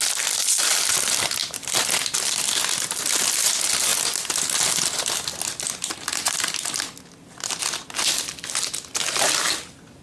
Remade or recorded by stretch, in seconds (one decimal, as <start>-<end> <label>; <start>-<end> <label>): 0.0-10.0 recorded